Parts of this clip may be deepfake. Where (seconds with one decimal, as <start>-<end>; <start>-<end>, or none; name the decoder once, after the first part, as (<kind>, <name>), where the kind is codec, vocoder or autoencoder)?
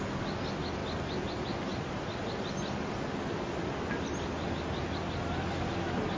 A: none